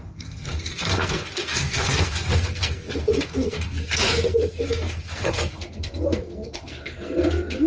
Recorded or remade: remade